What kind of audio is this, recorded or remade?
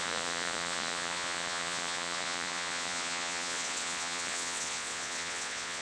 remade